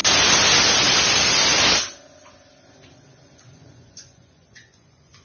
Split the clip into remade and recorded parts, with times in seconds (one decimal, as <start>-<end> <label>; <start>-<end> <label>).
0.0-3.1 recorded; 3.1-5.2 remade